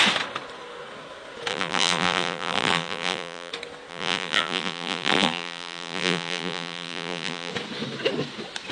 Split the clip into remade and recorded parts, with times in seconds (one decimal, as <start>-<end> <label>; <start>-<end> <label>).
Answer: 0.0-1.5 recorded; 1.5-3.5 remade; 3.5-3.9 recorded; 3.9-7.5 remade; 7.5-8.7 recorded